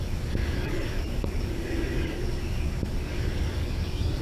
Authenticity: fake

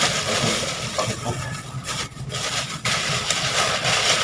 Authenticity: real